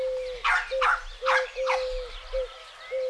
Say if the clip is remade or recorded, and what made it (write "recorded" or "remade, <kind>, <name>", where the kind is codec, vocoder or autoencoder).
recorded